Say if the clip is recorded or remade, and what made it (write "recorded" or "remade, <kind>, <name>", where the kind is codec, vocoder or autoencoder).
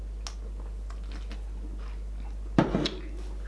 recorded